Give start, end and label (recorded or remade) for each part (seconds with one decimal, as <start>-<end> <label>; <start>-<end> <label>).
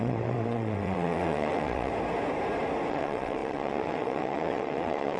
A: 0.0-1.9 remade; 1.9-2.9 recorded; 2.9-5.2 remade